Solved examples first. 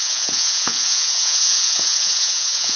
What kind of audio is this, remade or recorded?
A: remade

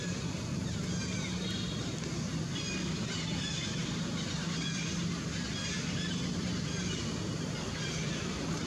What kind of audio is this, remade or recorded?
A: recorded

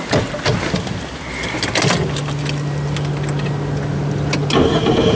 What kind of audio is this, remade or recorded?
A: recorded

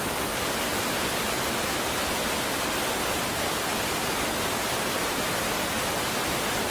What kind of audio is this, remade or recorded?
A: recorded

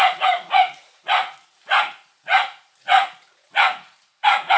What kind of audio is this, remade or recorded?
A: remade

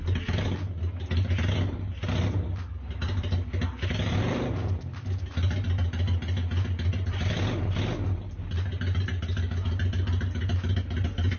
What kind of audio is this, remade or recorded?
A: recorded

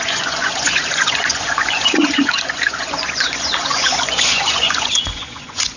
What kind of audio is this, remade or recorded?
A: remade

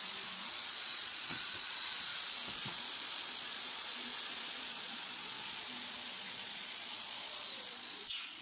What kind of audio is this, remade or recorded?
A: remade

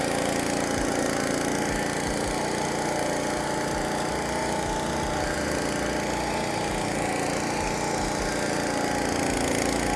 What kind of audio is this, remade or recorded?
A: recorded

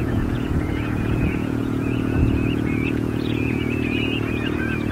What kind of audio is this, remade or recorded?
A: remade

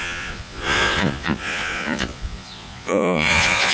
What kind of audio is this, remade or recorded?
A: remade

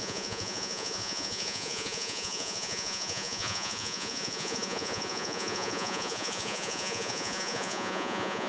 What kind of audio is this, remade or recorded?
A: remade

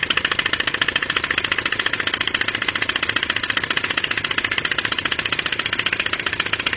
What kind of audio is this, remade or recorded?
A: recorded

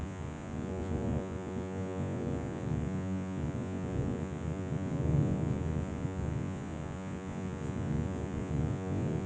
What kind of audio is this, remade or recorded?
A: remade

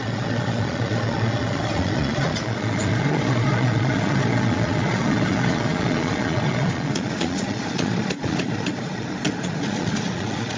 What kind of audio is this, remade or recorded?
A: remade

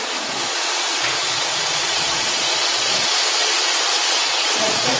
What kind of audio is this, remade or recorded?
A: remade